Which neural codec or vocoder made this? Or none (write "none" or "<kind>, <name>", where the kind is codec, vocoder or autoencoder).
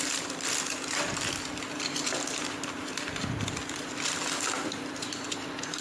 none